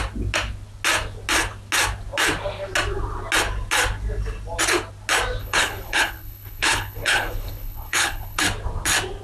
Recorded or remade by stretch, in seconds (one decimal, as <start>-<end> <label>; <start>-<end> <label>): 0.0-5.4 recorded; 5.4-8.4 remade; 8.4-9.2 recorded